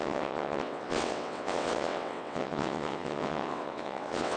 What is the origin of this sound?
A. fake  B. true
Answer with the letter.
A